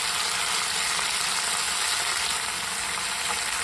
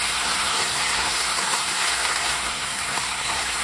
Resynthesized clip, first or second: second